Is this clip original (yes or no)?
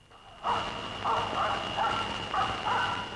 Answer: yes